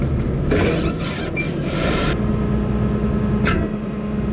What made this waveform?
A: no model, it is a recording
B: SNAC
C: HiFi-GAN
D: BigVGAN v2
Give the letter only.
A